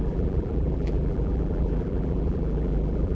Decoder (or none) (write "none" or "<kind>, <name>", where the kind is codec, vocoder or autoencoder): vocoder, BigVGAN v2